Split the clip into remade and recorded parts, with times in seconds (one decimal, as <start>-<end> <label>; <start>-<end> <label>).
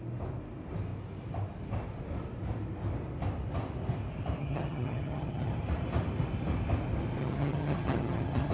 0.0-4.4 recorded; 4.4-5.5 remade; 5.5-7.2 recorded; 7.2-8.5 remade